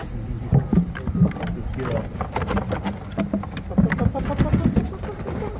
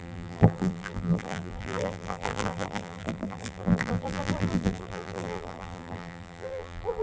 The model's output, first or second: second